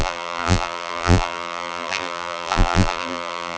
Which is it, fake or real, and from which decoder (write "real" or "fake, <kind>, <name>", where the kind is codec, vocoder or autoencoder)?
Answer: fake, vocoder, BigVGAN v2